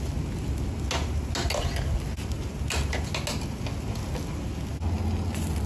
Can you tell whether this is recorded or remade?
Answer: recorded